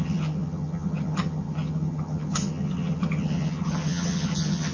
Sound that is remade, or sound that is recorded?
remade